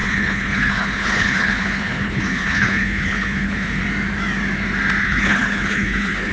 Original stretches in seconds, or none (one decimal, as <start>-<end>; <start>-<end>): 3.8-5.0